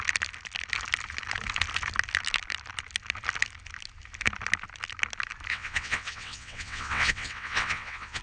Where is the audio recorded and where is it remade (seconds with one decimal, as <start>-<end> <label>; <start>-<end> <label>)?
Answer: 0.0-5.5 recorded; 5.5-8.2 remade